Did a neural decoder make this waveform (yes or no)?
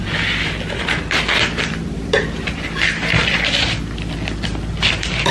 no